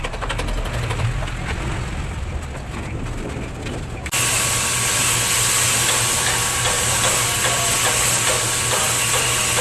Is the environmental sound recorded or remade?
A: recorded